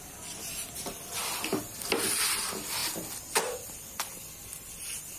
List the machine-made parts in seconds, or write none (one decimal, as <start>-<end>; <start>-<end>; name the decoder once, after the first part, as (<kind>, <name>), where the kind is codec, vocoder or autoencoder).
none